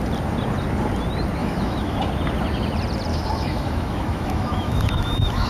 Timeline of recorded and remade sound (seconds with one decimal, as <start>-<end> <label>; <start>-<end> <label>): 0.0-1.4 recorded; 1.4-2.0 remade; 2.0-3.1 recorded; 3.1-5.5 remade